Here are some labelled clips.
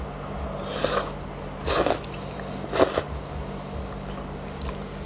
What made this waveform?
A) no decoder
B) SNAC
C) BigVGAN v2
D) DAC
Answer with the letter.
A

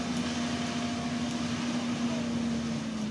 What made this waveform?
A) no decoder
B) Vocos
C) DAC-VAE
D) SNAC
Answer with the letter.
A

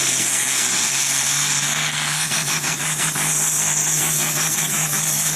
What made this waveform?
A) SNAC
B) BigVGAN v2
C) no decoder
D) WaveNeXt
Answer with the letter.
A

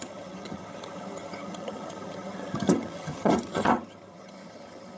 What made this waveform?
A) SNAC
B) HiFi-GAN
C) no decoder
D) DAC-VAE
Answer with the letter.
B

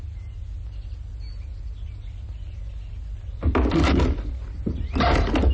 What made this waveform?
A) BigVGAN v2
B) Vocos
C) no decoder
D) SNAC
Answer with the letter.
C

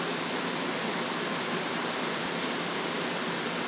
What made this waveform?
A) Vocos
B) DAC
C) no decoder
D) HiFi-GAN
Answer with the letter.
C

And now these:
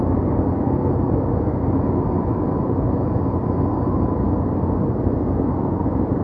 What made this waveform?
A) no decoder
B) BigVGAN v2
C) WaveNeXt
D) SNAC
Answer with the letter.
A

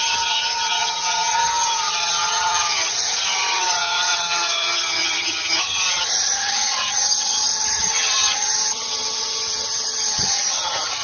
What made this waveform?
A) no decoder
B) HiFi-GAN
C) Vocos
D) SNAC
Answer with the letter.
B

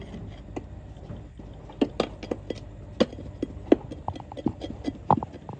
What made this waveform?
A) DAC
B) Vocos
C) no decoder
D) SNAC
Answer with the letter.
C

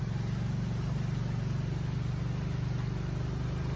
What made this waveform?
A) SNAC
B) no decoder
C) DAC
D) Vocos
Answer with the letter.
B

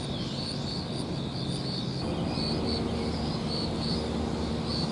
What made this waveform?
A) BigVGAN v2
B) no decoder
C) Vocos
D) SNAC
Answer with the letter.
B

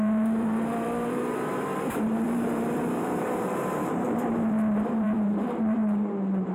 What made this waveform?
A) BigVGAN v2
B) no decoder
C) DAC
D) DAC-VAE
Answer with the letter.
A